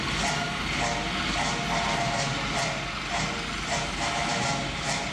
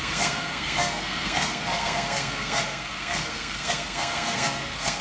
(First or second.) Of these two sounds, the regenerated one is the second